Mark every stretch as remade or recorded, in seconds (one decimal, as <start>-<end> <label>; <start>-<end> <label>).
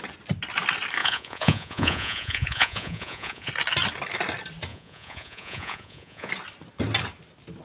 0.0-1.0 recorded; 1.0-3.5 remade; 3.5-4.7 recorded; 4.7-6.3 remade; 6.3-7.6 recorded